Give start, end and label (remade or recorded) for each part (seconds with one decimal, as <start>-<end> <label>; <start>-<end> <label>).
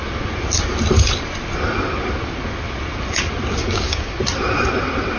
0.0-3.6 recorded; 3.6-4.2 remade; 4.2-5.2 recorded